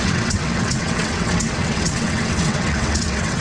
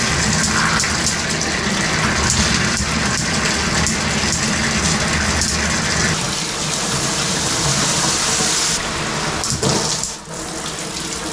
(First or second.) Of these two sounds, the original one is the second